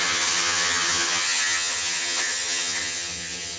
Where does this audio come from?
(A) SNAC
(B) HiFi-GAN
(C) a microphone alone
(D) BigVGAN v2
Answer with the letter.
B